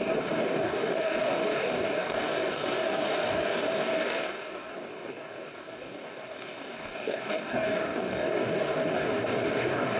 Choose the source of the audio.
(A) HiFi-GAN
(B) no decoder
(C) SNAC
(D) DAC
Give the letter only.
D